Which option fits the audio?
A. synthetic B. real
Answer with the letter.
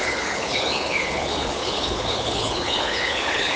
A